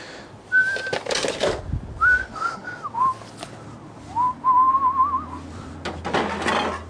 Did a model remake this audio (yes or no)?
no